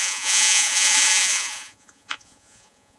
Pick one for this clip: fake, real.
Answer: fake